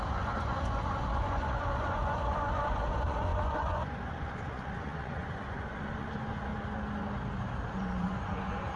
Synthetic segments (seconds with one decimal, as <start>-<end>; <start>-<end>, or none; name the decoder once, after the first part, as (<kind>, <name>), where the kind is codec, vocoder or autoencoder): 0.0-6.5 (vocoder, Vocos); 7.7-8.8